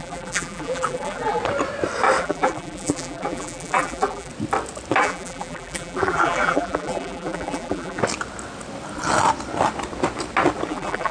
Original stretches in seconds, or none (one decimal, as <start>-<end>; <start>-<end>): 1.4-2.2; 4.3-5.0; 8.0-10.7